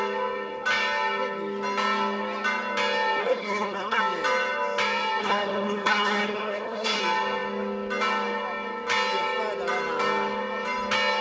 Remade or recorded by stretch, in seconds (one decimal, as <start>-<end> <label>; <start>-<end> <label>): 0.0-3.2 recorded; 3.2-4.0 remade; 4.0-5.2 recorded; 5.2-7.0 remade; 7.0-11.2 recorded